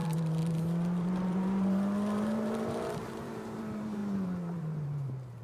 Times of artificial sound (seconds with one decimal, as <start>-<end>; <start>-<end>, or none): 0.0-5.4